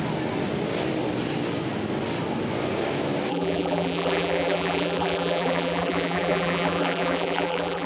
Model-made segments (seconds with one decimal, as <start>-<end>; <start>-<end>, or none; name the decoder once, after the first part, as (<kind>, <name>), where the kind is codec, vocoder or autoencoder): 3.3-7.9 (vocoder, BigVGAN v2)